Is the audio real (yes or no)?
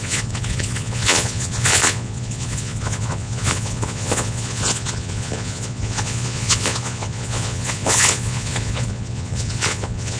no